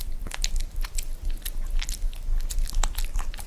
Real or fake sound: real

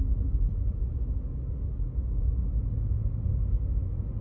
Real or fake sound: real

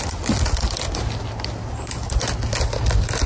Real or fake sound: real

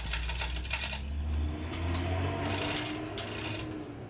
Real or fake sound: real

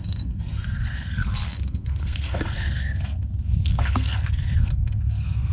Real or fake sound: fake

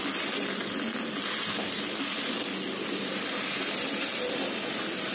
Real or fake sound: real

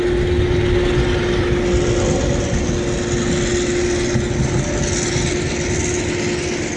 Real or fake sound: real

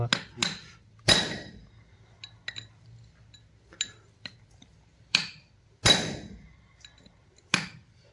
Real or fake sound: real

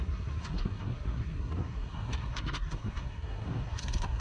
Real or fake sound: fake